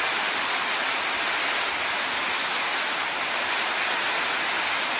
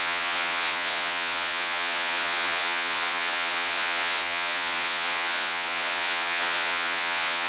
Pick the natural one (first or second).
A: first